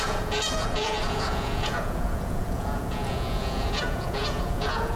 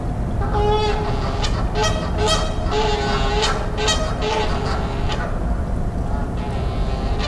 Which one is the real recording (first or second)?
second